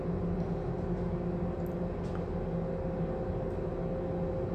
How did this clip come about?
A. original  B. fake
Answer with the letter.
A